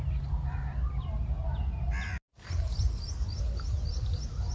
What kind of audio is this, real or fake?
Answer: real